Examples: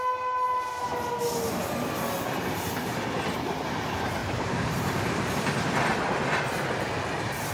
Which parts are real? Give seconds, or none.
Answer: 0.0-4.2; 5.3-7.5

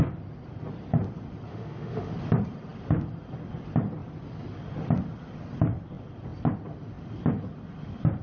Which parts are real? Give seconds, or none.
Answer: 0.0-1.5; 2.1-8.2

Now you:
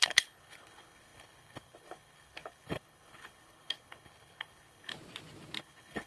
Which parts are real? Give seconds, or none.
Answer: 4.9-5.6

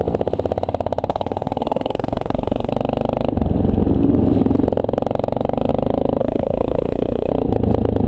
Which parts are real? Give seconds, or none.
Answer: 0.0-1.1; 2.7-6.2; 7.3-8.1